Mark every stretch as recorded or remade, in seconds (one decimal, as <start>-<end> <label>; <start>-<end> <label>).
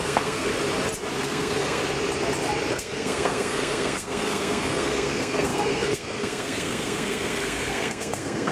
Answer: 0.0-0.5 remade; 0.5-1.2 recorded; 1.2-1.8 remade; 1.8-2.7 recorded; 2.7-8.5 remade